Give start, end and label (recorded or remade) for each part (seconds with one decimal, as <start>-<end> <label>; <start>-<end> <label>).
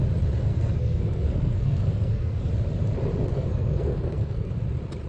0.0-0.4 recorded; 0.4-2.5 remade; 2.5-3.3 recorded; 3.3-4.5 remade; 4.5-5.1 recorded